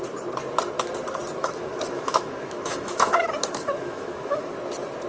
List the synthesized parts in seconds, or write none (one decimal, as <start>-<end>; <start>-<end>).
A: 1.4-4.5